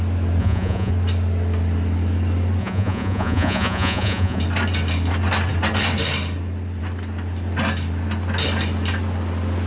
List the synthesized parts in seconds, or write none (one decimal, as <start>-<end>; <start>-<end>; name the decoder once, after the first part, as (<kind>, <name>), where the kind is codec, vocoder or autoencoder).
0.4-0.9 (vocoder, Vocos); 2.6-4.4